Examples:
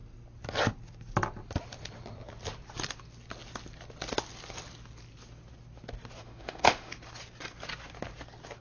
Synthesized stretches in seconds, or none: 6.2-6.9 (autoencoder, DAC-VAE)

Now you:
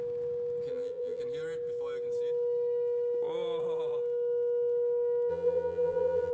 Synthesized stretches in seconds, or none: 0.7-1.2 (vocoder, BigVGAN v2); 5.3-6.3

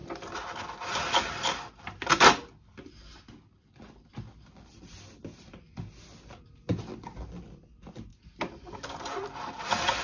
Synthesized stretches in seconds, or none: none

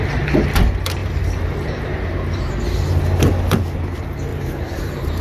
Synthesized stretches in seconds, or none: 1.0-2.5 (vocoder, BigVGAN v2); 4.3-5.2